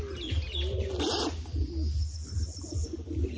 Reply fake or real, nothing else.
real